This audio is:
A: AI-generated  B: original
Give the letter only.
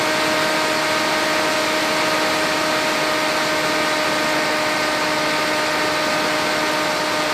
B